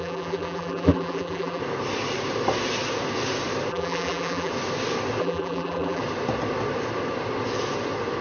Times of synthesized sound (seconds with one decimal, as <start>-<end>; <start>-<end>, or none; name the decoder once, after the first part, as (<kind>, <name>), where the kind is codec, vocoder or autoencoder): 0.0-1.6 (vocoder, BigVGAN v2); 3.7-4.5; 5.2-6.0